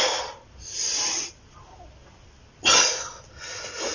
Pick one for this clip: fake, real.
real